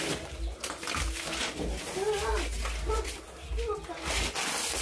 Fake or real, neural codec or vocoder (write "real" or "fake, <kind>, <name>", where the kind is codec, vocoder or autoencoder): real